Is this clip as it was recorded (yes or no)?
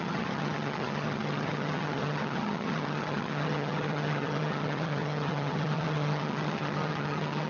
no